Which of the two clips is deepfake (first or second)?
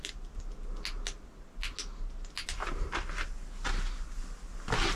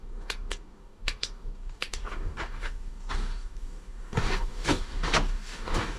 second